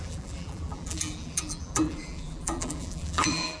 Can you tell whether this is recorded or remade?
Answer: remade